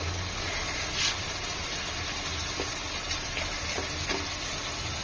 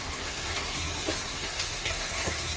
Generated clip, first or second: second